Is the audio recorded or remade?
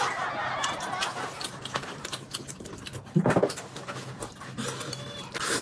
recorded